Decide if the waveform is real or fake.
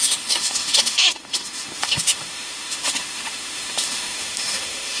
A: fake